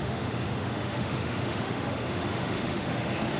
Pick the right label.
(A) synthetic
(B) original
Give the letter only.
A